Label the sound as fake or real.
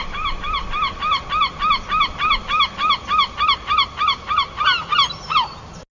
real